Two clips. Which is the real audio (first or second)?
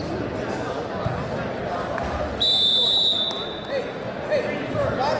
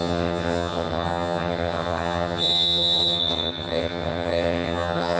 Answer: first